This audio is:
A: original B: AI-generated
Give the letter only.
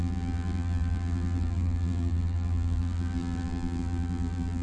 B